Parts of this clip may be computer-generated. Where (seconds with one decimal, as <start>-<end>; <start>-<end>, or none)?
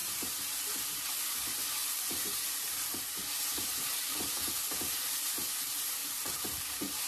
0.0-1.0; 1.8-4.5; 6.0-7.1